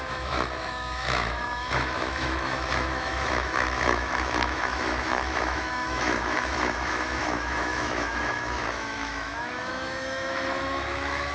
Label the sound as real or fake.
fake